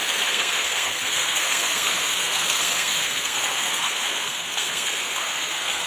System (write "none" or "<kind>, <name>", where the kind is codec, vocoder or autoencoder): codec, SNAC